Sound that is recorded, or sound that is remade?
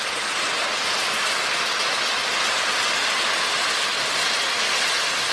recorded